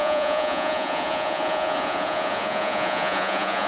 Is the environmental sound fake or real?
fake